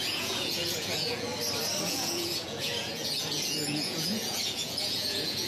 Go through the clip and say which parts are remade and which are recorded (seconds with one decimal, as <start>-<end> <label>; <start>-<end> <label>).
0.0-1.3 remade; 1.3-1.9 recorded; 1.9-5.5 remade